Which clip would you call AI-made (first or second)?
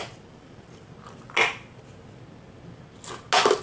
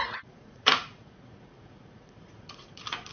second